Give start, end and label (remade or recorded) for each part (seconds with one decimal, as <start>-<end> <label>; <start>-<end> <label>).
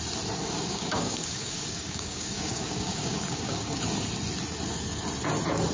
0.0-0.4 recorded; 0.4-3.8 remade; 3.8-5.7 recorded